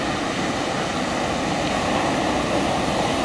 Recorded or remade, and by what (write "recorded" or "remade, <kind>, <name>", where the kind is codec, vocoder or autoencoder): recorded